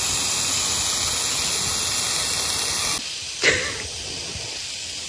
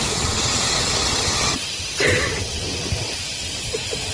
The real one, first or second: first